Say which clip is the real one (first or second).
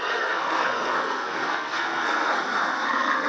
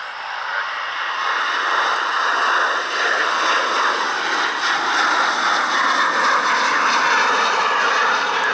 second